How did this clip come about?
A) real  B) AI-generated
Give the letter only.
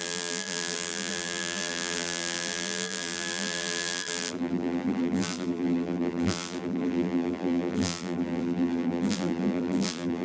B